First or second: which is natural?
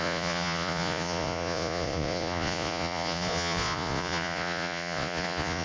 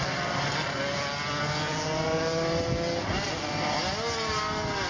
second